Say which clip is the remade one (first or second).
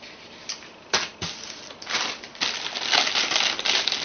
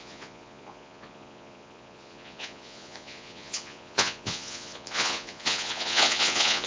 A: second